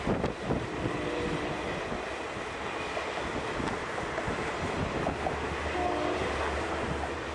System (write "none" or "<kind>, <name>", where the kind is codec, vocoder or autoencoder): none